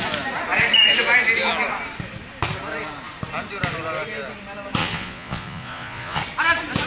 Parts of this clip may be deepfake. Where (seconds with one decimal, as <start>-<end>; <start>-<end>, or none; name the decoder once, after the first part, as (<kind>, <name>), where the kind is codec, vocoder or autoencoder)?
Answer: 4.8-6.2 (vocoder, Vocos)